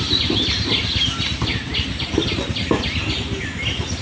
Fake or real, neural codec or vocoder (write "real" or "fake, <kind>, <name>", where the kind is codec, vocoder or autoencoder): real